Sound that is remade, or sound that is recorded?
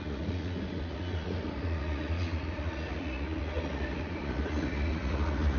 remade